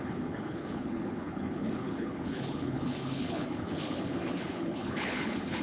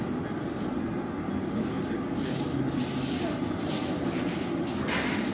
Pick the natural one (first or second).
second